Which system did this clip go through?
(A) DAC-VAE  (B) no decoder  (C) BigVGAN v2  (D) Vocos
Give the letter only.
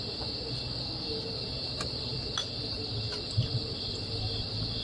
B